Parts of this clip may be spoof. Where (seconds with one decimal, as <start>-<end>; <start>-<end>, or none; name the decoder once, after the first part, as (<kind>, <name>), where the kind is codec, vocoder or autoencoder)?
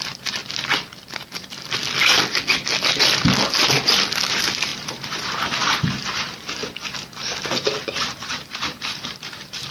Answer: 0.0-0.4 (vocoder, BigVGAN v2); 4.3-6.6; 8.0-9.7